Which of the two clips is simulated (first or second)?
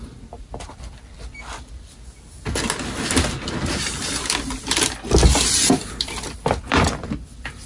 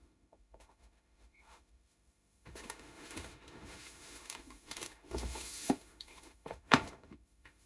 second